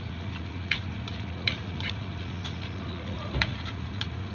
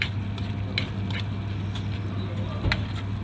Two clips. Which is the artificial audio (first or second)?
first